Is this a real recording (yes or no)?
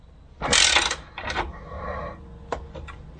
yes